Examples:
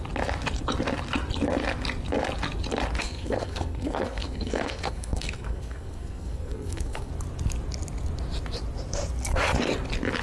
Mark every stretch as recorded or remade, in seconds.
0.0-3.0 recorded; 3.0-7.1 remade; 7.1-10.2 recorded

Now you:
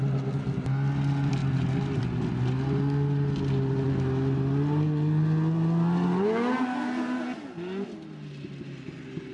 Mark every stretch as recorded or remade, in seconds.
0.0-9.3 recorded

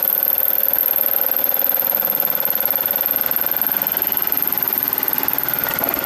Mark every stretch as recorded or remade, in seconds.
0.0-6.1 recorded

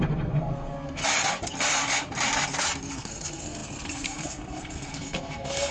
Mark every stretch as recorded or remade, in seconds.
0.0-1.0 remade; 1.0-2.9 recorded; 2.9-5.7 remade

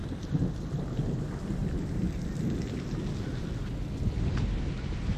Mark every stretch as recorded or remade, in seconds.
0.0-5.2 recorded

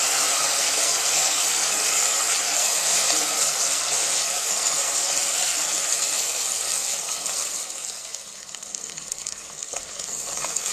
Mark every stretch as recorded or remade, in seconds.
0.0-10.7 remade